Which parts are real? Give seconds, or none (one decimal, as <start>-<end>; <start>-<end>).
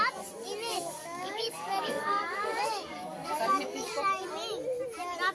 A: 0.0-0.7; 3.9-5.3